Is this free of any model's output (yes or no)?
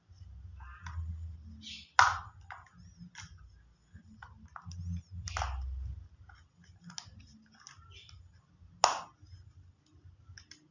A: yes